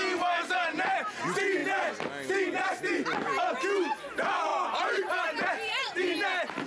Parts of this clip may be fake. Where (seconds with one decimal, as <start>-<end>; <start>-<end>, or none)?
none

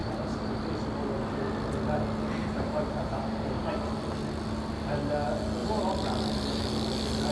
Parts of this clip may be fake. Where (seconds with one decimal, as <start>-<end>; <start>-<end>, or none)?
0.0-0.6; 2.4-3.6; 5.6-6.6

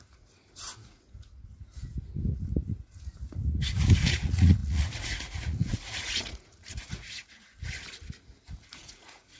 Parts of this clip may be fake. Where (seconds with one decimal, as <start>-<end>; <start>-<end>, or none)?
0.0-1.5; 2.3-3.4; 4.1-7.5; 8.7-9.4

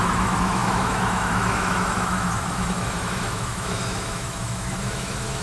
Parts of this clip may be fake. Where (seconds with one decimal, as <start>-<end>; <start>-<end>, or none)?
0.0-5.4

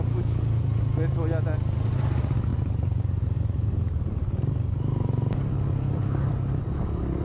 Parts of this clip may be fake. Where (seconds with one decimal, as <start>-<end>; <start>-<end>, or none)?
none

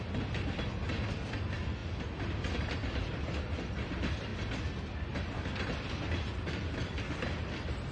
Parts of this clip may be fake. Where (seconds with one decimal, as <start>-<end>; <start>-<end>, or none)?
none

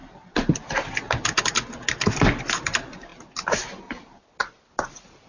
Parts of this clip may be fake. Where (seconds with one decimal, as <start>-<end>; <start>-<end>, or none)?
none

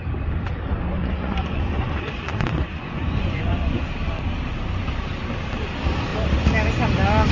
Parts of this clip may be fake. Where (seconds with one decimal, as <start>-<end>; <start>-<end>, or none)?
1.0-3.9